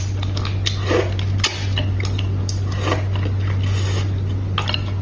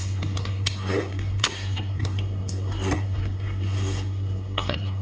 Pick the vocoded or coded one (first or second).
second